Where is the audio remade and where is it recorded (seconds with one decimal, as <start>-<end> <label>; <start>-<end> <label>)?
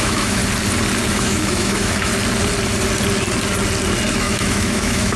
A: 0.0-0.4 remade; 0.4-1.1 recorded; 1.1-2.1 remade; 2.1-4.1 recorded; 4.1-5.2 remade